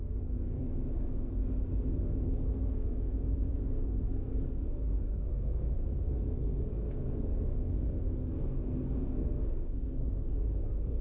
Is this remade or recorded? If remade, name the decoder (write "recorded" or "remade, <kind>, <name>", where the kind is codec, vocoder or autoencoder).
remade, codec, SNAC